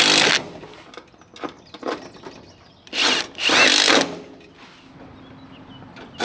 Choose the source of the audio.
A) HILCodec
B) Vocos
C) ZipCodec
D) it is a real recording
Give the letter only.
D